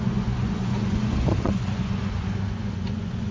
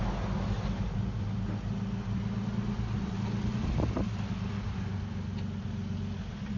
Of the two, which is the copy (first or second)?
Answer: first